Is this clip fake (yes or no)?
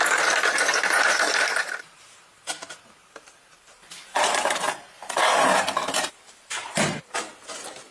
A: yes